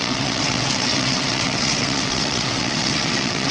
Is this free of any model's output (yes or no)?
no